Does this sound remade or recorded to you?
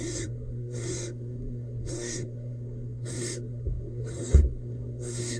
remade